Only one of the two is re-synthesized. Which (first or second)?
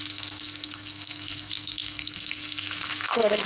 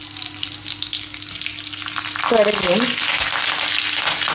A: first